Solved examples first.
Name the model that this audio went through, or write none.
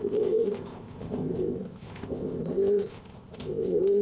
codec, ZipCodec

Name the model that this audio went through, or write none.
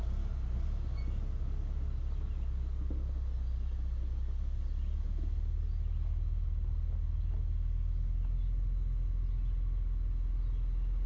none